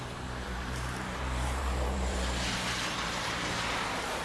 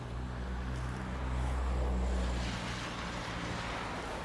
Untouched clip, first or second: second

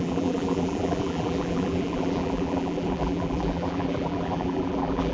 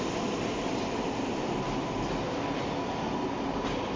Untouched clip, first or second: second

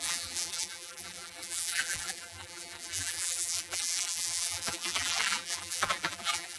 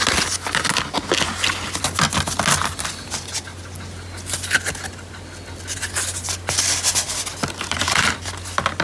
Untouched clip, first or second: second